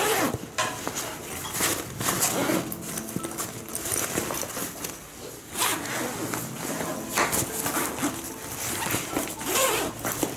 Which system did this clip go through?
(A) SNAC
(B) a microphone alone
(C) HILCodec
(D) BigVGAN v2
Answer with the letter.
B